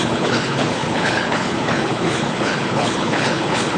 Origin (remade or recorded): remade